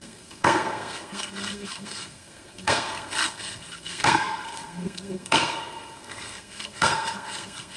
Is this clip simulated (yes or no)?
yes